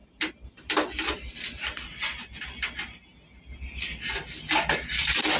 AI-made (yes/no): no